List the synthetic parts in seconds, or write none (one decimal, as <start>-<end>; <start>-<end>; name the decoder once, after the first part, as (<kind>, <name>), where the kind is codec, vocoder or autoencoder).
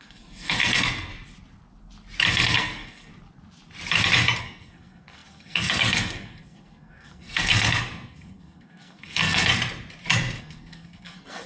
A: 0.0-1.1 (codec, SNAC); 2.3-3.1; 4.4-9.5; 10.4-11.5